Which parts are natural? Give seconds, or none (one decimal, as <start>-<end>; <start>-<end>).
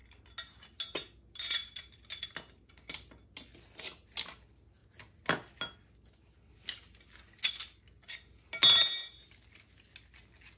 0.0-10.6